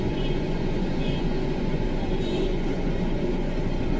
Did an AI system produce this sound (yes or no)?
yes